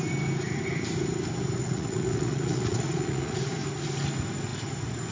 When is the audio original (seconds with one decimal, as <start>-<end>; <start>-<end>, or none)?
0.0-1.6; 3.4-5.1